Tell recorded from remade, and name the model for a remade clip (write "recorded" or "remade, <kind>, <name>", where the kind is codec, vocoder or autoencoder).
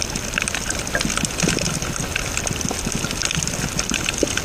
recorded